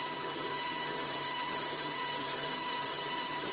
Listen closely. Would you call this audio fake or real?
fake